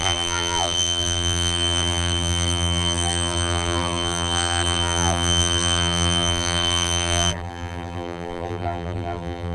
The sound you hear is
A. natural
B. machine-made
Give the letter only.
B